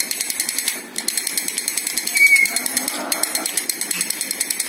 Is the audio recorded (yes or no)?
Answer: no